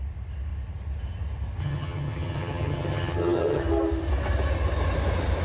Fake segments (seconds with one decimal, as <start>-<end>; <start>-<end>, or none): 1.6-3.6